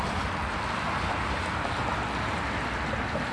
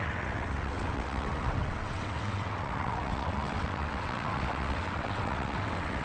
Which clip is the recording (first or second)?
first